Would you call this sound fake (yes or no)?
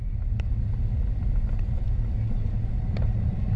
no